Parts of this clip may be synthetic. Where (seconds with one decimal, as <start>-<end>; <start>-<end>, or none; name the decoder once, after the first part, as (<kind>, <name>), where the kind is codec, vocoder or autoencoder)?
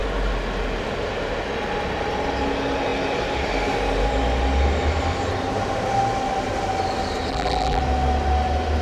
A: 7.3-7.8 (vocoder, BigVGAN v2)